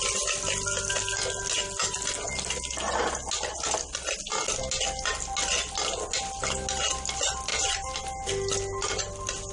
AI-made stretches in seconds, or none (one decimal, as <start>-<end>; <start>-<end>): none